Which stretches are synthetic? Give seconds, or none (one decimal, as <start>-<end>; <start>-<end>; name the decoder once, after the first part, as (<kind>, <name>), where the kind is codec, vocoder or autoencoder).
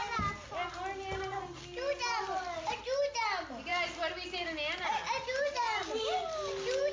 none